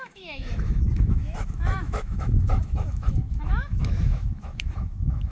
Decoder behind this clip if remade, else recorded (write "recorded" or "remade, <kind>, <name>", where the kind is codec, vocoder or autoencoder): remade, autoencoder, DAC-VAE